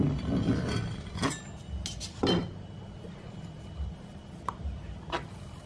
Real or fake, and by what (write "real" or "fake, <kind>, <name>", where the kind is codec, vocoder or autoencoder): real